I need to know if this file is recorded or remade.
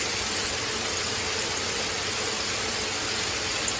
recorded